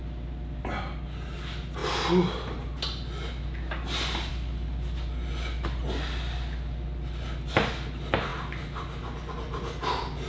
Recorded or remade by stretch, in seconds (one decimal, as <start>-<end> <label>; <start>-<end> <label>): 0.0-10.3 recorded